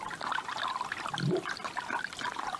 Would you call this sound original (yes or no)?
yes